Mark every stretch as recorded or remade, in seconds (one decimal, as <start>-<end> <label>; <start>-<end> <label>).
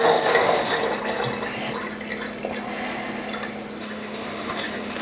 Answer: 0.0-0.8 remade; 0.8-3.8 recorded; 3.8-5.0 remade